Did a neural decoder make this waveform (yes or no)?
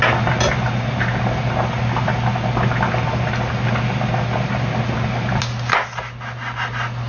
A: no